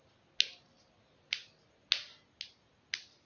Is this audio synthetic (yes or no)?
no